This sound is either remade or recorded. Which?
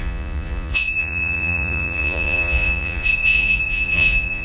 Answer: remade